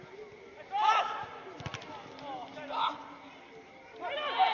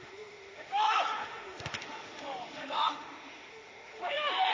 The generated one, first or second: second